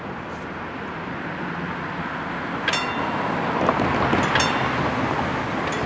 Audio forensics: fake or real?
real